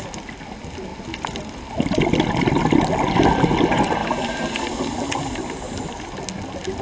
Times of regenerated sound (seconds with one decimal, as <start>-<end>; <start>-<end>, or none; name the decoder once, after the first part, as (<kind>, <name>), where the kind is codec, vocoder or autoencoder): none